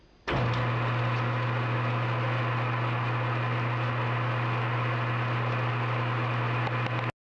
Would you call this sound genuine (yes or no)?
yes